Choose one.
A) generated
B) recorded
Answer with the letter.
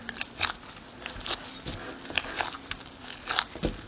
B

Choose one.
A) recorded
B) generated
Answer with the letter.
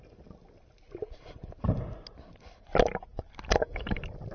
A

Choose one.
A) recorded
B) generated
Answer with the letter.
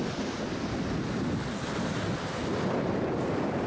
A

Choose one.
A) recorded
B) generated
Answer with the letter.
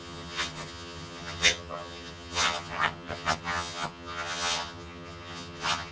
B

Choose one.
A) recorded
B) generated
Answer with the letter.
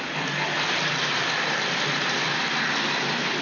A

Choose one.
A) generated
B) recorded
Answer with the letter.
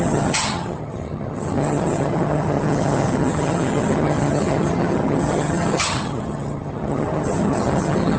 A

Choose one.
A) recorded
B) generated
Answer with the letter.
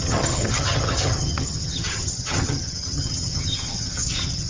B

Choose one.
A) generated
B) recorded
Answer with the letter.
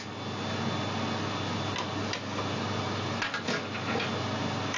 B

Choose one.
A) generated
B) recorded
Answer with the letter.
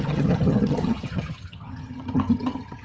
A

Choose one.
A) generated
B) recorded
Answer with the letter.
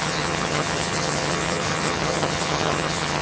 A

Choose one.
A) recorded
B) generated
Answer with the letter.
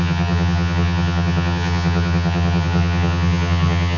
B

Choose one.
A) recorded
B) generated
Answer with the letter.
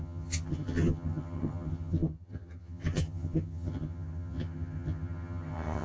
B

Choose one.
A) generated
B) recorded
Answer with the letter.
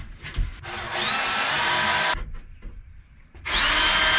B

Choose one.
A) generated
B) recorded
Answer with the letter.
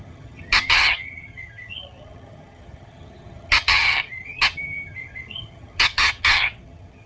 A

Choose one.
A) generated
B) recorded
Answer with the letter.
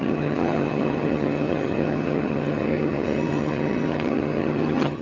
A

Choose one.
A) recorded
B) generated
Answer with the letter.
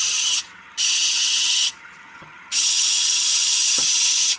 B